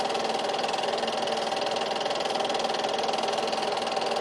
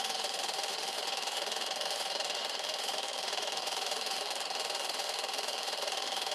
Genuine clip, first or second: first